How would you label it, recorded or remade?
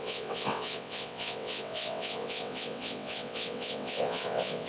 remade